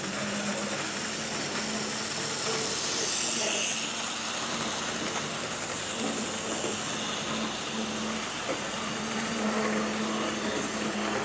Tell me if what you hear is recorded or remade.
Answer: recorded